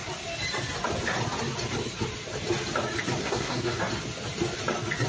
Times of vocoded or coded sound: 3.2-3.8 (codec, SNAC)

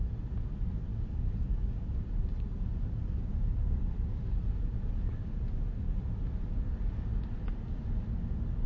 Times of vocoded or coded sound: none

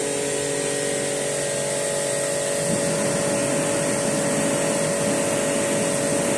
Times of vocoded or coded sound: none

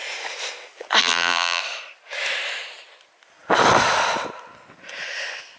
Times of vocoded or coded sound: 1.0-1.6 (vocoder, BigVGAN v2)

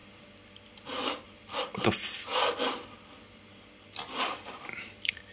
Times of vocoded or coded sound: none

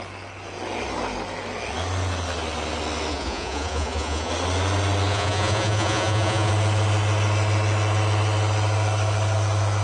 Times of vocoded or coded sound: 3.1-4.3 (vocoder, Vocos); 5.1-6.5

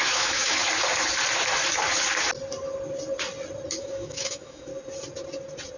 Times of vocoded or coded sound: 0.0-0.6 (autoencoder, DAC-VAE); 3.8-4.7

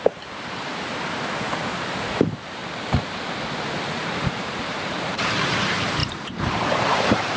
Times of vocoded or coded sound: 0.0-0.7 (vocoder, BigVGAN v2); 1.5-2.6; 4.3-7.4